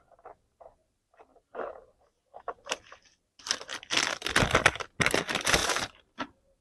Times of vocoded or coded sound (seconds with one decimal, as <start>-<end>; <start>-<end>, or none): 5.6-6.6